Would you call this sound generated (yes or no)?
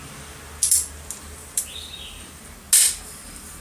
no